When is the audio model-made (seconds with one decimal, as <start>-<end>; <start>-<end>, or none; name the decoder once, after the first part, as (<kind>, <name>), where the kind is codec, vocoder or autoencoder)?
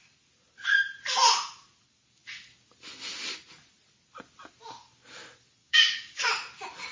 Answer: 5.6-6.2 (codec, DAC)